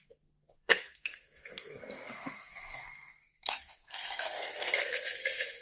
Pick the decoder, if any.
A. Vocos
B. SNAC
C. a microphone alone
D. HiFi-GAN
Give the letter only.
B